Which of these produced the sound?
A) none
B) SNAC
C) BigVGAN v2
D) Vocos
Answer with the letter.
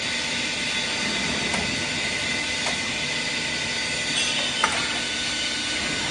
A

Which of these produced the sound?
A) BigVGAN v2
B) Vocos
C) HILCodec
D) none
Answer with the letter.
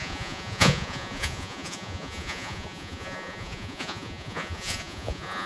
B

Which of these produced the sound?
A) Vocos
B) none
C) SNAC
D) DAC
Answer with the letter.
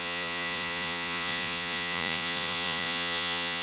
A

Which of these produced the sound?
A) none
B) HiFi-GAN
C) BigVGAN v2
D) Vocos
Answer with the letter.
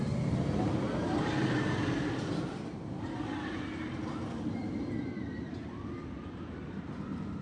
A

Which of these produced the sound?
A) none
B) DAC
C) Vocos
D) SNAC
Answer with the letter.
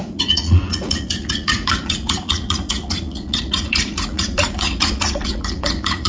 C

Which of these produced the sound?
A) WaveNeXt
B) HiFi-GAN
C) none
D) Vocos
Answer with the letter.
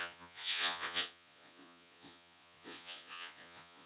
D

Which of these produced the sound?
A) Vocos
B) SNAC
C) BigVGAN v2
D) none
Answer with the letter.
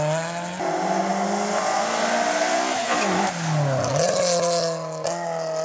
D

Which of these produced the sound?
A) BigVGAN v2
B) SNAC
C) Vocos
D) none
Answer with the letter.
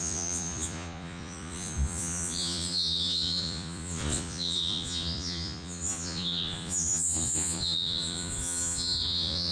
C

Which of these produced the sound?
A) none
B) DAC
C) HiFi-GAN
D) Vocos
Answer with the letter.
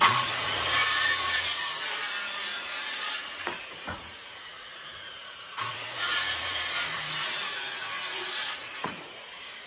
D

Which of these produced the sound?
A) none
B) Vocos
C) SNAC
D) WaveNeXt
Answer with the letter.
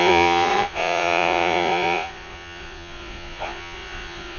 B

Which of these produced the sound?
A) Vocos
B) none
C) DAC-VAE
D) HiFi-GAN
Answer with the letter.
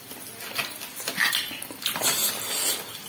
B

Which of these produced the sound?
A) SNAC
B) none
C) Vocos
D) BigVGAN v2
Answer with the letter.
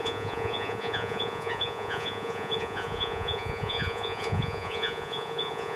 C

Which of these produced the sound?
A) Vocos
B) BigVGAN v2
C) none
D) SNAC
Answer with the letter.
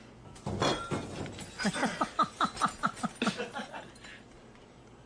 C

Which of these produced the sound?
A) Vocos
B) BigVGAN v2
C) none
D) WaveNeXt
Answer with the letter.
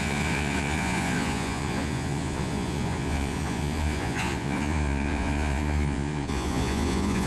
A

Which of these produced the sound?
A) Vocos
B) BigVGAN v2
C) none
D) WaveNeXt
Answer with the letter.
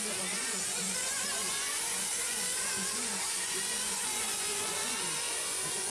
A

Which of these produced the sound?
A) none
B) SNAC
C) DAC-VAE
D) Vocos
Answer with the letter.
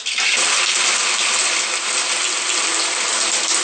A